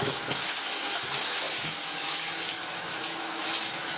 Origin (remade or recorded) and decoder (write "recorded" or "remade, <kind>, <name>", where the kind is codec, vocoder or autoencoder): remade, autoencoder, DAC-VAE